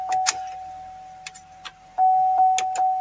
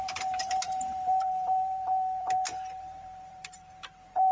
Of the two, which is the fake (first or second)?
second